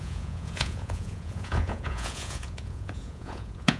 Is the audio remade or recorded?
remade